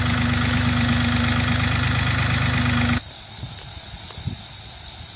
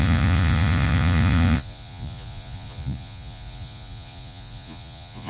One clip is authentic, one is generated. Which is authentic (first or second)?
first